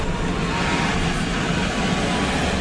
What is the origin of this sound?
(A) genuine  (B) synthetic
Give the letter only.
A